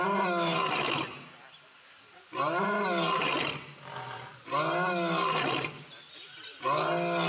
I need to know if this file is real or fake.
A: real